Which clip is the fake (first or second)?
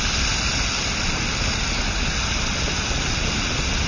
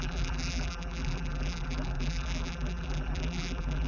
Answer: second